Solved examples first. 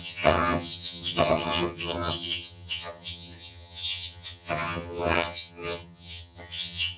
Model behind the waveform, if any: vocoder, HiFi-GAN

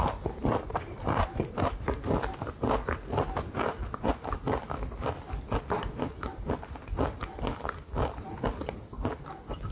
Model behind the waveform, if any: none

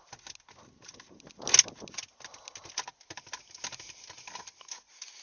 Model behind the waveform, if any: none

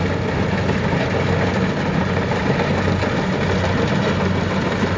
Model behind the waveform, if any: none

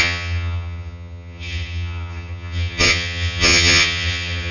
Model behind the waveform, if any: vocoder, HiFi-GAN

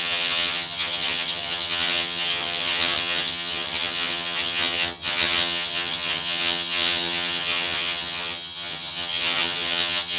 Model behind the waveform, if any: vocoder, HiFi-GAN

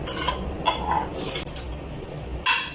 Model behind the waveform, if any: none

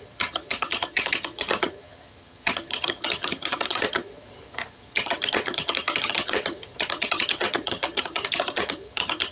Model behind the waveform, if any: vocoder, HiFi-GAN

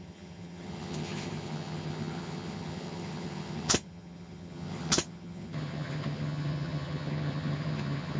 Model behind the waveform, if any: vocoder, HiFi-GAN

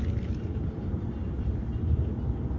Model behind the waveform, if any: none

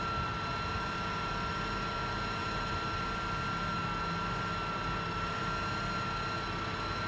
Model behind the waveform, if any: none